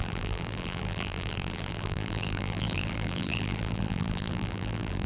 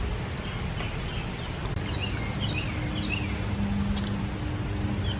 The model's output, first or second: first